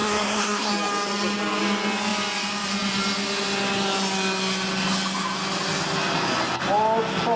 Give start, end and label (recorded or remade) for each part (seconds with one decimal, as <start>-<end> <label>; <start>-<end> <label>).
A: 0.0-0.7 remade; 0.7-7.4 recorded